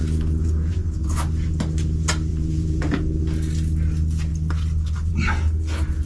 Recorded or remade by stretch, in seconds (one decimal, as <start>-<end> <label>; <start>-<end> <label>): 0.0-1.2 remade; 1.2-2.3 recorded; 2.3-3.2 remade; 3.2-6.1 recorded